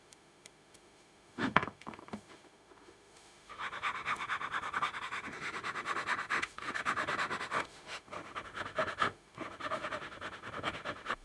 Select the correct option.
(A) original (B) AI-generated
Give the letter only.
B